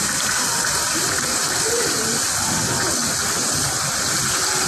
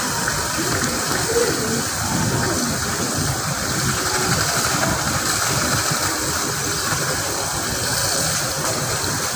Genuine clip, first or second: first